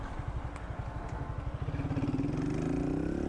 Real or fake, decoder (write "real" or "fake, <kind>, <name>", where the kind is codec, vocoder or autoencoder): real